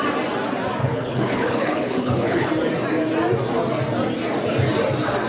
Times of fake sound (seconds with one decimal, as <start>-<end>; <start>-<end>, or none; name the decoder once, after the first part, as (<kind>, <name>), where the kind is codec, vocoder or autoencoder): 0.8-2.5 (codec, HILCodec)

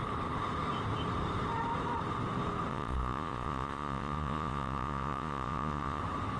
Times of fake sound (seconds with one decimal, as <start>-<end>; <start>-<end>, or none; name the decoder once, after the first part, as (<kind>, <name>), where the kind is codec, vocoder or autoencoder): 2.7-6.0 (vocoder, Vocos)

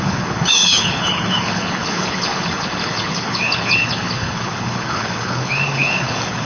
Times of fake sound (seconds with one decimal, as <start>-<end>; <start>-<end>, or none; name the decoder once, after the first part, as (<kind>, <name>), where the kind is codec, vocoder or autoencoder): 0.0-6.4 (codec, HILCodec)